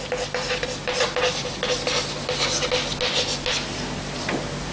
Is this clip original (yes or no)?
yes